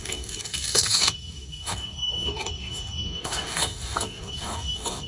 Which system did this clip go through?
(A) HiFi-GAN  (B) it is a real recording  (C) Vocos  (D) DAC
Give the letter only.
D